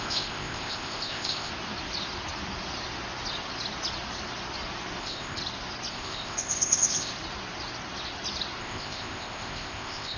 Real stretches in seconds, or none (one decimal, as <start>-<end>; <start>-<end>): 1.5-5.0; 5.4-5.9; 7.1-8.6